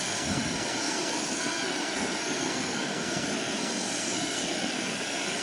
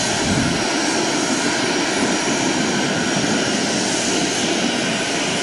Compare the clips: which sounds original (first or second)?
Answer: second